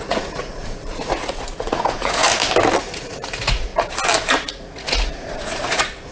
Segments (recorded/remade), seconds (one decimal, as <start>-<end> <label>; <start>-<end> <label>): 0.0-2.2 remade; 2.2-2.8 recorded; 2.8-3.7 remade; 3.7-4.5 recorded; 4.5-6.1 remade